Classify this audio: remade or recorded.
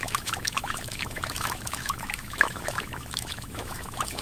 remade